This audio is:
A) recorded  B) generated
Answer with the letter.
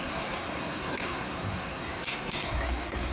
B